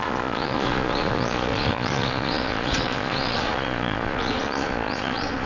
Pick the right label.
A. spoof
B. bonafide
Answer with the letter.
A